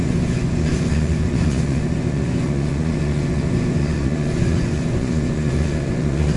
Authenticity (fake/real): fake